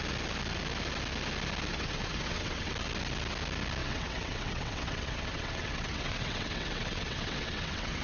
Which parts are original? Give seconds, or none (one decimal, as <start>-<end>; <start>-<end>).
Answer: 0.0-1.7; 2.7-3.8